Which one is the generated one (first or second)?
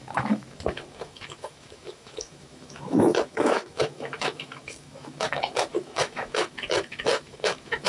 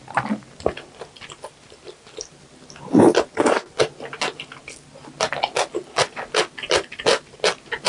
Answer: first